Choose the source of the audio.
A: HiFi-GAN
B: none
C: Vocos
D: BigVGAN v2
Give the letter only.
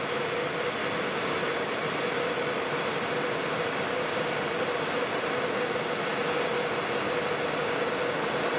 B